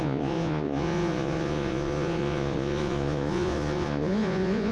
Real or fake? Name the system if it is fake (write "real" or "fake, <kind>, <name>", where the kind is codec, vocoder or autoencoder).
fake, vocoder, Vocos